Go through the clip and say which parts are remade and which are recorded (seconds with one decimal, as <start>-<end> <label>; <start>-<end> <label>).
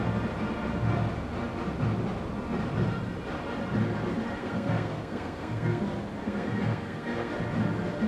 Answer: 0.0-4.4 recorded; 4.4-5.8 remade; 5.8-6.2 recorded; 6.2-7.3 remade; 7.3-8.1 recorded